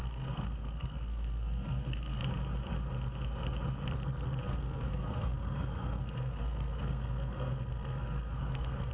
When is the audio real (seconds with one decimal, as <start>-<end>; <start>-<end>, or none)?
2.2-4.4